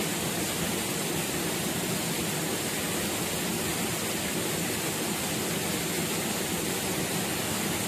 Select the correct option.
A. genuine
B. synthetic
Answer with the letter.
A